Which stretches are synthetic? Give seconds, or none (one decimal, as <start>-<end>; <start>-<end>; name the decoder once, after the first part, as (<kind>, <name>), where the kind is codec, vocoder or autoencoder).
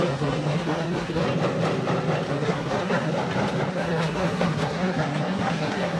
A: 0.0-1.2 (codec, SNAC); 2.3-3.1; 3.7-6.0